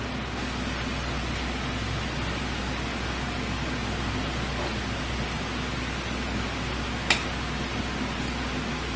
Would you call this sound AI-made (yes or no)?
no